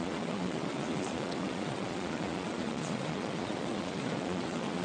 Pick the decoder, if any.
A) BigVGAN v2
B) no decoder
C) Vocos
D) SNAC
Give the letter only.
C